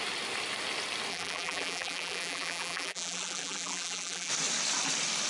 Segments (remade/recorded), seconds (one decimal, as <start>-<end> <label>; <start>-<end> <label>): 0.0-1.1 recorded; 1.1-4.3 remade; 4.3-5.3 recorded